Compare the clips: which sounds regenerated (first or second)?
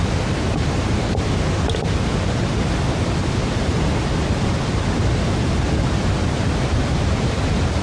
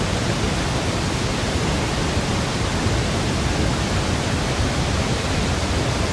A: first